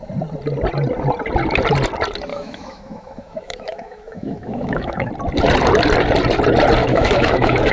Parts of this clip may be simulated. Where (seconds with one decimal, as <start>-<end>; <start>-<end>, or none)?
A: 2.3-5.1; 6.8-7.7